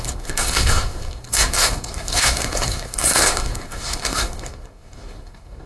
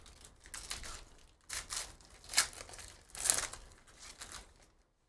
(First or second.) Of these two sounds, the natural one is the second